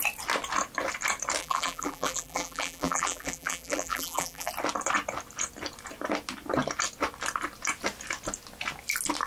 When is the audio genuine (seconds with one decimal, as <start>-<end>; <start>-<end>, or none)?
0.0-1.4; 4.5-9.3